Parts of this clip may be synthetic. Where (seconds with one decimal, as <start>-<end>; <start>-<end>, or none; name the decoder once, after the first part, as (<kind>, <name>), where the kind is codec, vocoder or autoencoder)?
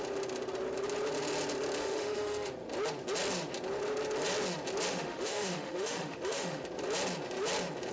1.8-2.5 (autoencoder, DAC-VAE); 4.9-6.6